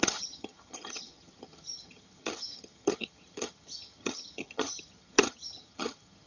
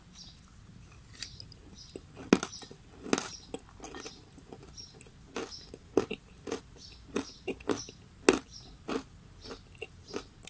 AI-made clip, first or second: first